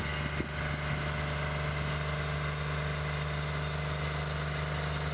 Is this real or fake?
real